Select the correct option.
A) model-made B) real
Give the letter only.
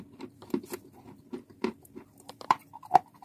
B